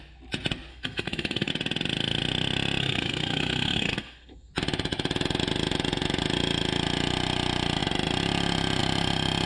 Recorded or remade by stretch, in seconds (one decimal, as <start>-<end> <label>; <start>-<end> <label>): 0.0-0.7 recorded; 0.7-1.5 remade; 1.5-2.8 recorded; 2.8-4.5 remade; 4.5-9.5 recorded